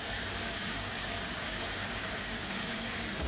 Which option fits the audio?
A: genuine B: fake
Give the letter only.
B